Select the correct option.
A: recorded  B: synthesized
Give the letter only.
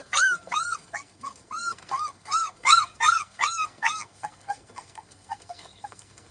B